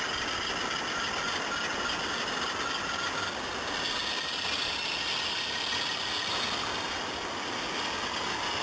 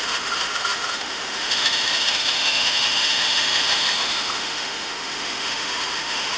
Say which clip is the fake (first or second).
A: second